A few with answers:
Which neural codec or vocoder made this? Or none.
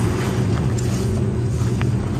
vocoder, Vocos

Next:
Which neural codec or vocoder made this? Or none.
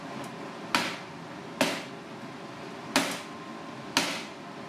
none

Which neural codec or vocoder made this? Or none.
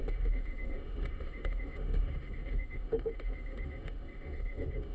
autoencoder, DAC-VAE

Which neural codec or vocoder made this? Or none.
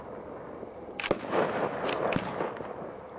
none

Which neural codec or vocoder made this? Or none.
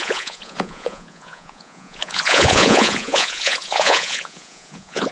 vocoder, Vocos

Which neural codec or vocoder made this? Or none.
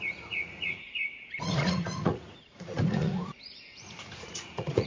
vocoder, Vocos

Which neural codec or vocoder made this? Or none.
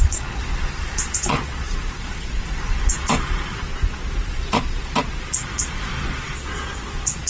vocoder, Vocos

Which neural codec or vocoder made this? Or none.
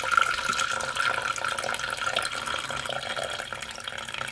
none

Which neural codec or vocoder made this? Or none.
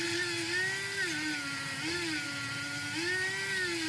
none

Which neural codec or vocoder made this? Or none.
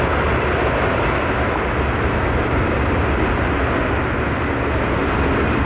none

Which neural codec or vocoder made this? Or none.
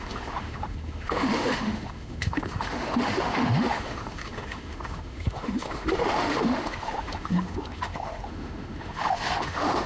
autoencoder, DAC-VAE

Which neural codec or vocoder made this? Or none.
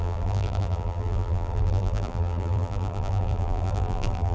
vocoder, BigVGAN v2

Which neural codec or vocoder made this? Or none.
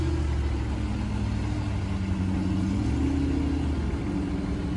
none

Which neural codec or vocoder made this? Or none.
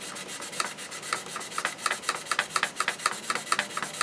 none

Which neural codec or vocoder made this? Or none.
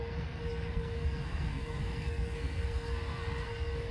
codec, SNAC